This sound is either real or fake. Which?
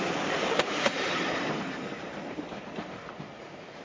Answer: fake